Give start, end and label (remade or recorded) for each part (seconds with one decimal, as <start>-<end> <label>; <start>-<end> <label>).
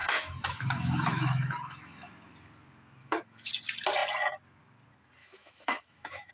0.0-2.1 remade; 2.1-3.0 recorded; 3.0-3.5 remade; 3.5-5.2 recorded; 5.2-6.3 remade